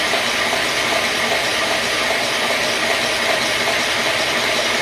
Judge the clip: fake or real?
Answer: real